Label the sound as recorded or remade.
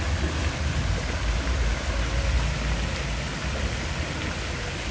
recorded